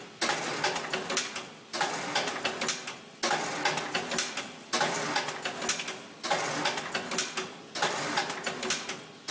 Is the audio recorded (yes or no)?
yes